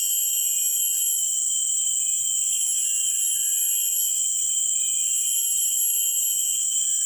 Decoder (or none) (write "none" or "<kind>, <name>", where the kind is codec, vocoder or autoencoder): none